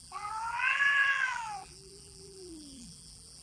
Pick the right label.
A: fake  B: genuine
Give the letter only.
A